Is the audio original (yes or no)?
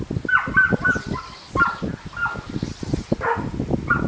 yes